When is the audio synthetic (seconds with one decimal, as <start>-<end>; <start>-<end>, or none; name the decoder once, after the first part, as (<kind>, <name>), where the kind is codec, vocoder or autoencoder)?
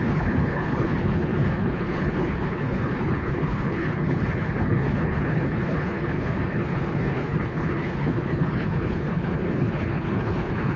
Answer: 0.0-10.8 (codec, HILCodec)